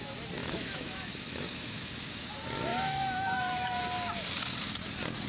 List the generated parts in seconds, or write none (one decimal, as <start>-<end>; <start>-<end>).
0.4-2.3; 2.7-3.8